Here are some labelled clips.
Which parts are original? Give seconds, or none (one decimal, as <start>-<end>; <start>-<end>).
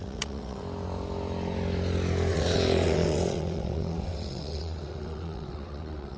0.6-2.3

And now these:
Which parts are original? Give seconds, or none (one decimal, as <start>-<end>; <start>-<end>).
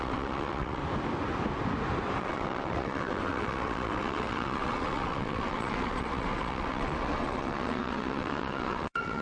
0.8-2.2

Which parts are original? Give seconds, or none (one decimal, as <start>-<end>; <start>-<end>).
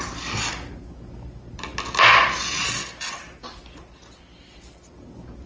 0.0-5.5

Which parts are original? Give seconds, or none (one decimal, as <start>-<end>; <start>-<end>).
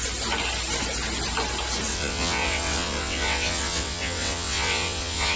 0.0-1.9